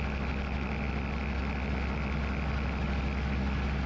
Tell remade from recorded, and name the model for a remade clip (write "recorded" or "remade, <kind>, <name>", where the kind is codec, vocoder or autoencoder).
recorded